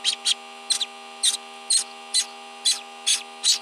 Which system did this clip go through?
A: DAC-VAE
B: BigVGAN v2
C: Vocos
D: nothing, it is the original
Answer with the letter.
D